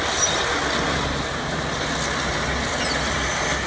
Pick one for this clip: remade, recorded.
recorded